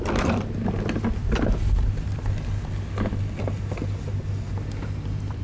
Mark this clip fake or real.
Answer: real